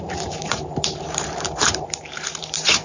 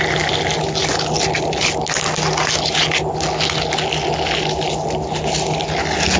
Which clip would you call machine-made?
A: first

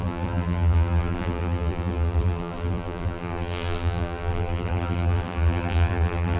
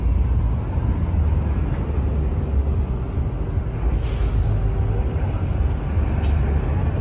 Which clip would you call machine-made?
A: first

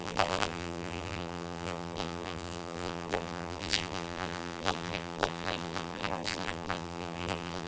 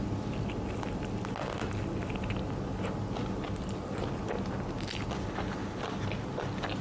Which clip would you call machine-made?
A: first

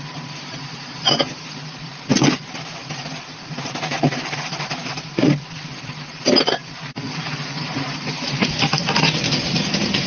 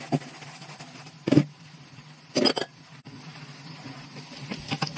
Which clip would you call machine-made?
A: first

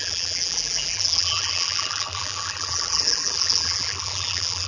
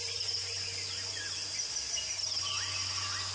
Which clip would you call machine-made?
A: first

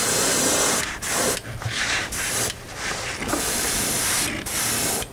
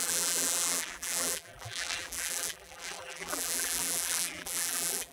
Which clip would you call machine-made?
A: second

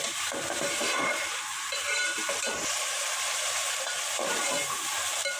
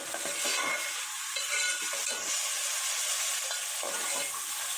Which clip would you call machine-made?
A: first